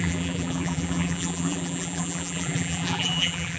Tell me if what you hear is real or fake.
fake